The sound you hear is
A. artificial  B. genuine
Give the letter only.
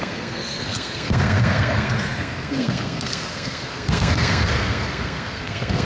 A